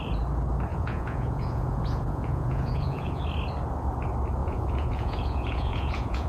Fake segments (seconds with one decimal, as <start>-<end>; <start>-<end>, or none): 0.7-3.2; 4.4-6.3